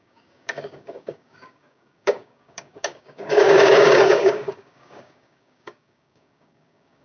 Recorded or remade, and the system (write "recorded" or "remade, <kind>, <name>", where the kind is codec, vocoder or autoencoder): remade, codec, DAC